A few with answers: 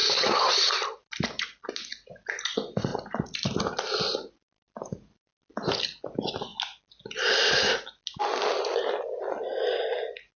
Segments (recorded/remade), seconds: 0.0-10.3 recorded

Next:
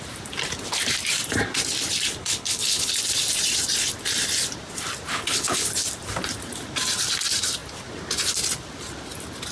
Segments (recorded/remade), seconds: 0.0-2.2 recorded; 2.2-2.9 remade; 2.9-5.1 recorded; 5.1-5.7 remade; 5.7-9.5 recorded